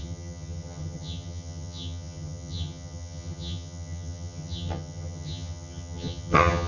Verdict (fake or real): fake